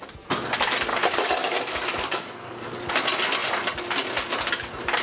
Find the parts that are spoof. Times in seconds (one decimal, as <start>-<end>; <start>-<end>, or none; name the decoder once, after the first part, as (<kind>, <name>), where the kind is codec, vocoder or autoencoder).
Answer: 0.9-2.9 (codec, DAC)